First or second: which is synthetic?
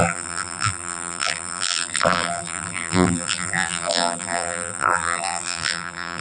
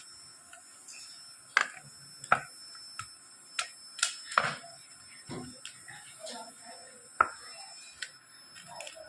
first